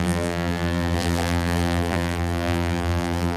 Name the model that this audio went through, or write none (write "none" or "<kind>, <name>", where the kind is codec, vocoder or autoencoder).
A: vocoder, BigVGAN v2